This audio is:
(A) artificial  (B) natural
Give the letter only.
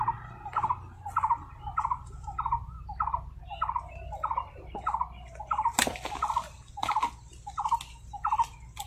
B